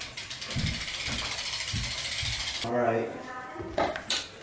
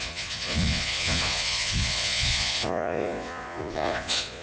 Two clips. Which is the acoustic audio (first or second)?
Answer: first